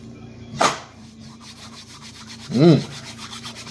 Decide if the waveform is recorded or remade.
remade